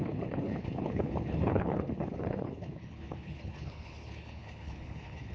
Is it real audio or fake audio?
fake